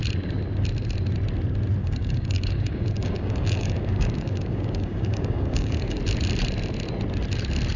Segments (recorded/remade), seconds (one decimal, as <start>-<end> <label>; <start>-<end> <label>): 0.0-1.8 recorded; 1.8-6.0 remade; 6.0-7.8 recorded